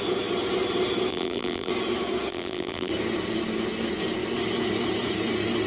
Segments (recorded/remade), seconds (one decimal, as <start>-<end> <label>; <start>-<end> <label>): 0.0-1.1 recorded; 1.1-1.7 remade; 1.7-2.3 recorded; 2.3-2.9 remade; 2.9-5.7 recorded